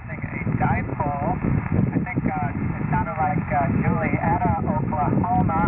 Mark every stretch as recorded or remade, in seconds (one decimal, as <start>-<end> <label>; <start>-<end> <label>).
0.0-5.7 recorded